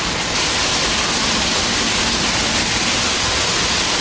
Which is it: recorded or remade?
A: recorded